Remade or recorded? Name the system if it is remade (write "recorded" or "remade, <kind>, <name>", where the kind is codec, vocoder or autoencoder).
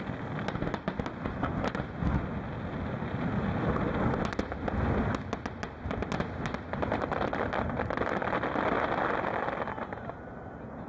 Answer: recorded